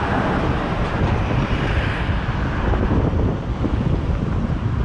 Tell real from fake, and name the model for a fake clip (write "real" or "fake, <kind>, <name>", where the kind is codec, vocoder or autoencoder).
fake, vocoder, BigVGAN v2